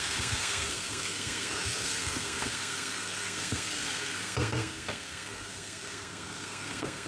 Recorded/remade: remade